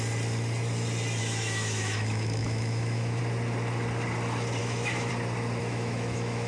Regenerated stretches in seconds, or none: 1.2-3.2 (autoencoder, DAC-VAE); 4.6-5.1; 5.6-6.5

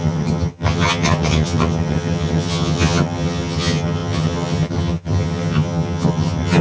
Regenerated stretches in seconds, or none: 0.0-6.6 (vocoder, HiFi-GAN)

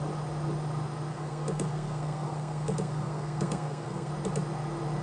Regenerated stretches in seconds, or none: 1.1-4.1 (codec, SNAC)